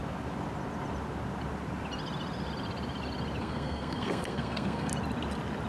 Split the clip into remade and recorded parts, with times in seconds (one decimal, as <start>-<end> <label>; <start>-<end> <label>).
0.0-3.4 recorded; 3.4-4.9 remade; 4.9-5.7 recorded